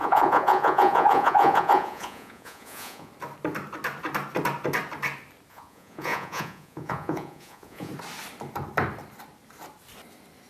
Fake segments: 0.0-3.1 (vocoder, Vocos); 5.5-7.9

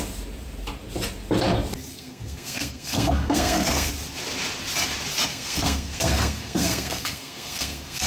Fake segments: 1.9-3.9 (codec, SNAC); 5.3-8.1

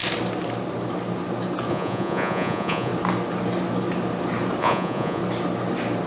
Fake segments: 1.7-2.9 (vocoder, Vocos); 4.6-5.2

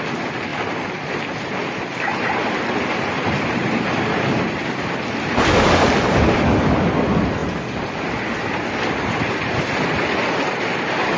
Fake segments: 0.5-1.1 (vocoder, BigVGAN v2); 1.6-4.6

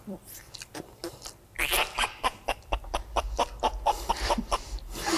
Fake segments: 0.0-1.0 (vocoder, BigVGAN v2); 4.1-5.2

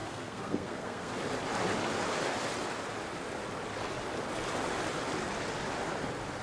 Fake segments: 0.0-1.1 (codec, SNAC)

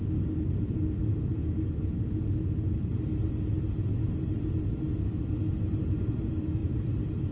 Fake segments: none